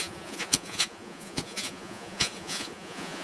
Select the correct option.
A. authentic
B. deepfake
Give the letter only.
B